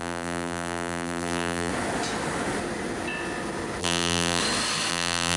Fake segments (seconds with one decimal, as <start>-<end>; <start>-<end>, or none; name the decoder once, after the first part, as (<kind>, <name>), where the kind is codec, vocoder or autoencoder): 0.0-1.7 (vocoder, BigVGAN v2); 3.8-4.4; 4.9-5.4